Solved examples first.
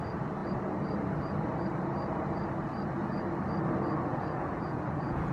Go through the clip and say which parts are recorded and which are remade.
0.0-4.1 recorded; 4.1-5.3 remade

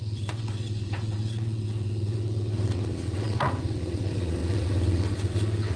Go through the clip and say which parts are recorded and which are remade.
0.0-5.8 remade

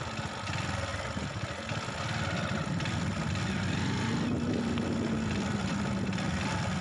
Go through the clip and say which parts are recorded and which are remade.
0.0-6.8 recorded

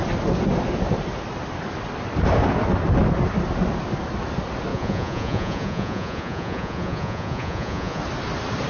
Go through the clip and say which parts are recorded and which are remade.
0.0-4.7 recorded; 4.7-8.0 remade; 8.0-8.7 recorded

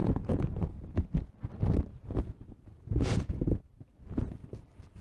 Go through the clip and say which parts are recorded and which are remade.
0.0-1.3 remade; 1.3-1.9 recorded; 1.9-3.6 remade; 3.6-5.0 recorded

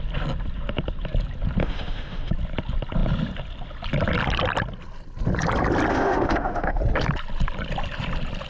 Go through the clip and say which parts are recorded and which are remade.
0.0-1.6 recorded; 1.6-2.3 remade; 2.3-5.9 recorded; 5.9-6.8 remade; 6.8-8.5 recorded